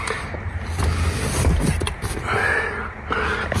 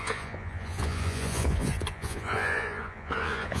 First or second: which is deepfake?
second